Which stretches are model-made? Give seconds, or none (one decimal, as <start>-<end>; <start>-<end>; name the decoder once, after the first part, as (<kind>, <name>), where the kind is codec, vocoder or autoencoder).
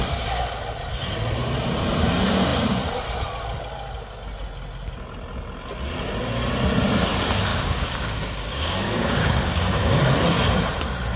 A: 7.5-10.0 (codec, DAC)